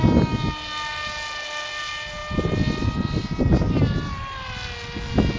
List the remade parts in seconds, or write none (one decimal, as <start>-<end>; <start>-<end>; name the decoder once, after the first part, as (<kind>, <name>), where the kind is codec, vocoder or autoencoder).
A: none